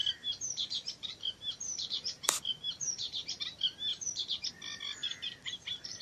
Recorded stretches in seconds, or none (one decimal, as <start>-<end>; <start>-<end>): 3.4-3.9; 4.5-5.0

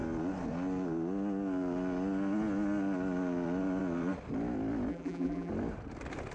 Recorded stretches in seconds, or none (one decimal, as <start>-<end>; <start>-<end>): 0.0-4.9; 5.5-6.3

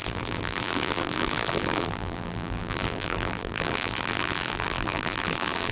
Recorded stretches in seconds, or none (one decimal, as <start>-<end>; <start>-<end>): none

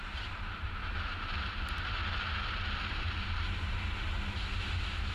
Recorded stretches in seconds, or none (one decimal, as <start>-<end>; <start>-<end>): 2.0-5.1